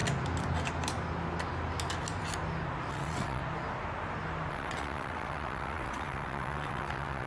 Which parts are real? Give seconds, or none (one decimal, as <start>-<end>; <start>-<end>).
0.0-2.9; 3.4-4.5